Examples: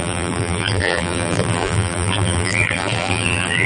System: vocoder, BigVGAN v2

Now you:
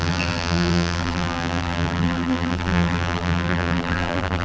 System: vocoder, BigVGAN v2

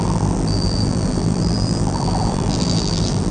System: vocoder, BigVGAN v2